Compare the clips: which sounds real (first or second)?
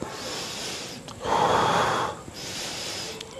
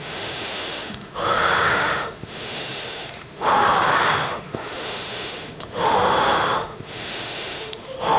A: first